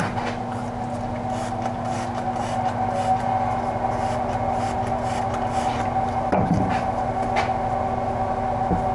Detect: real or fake real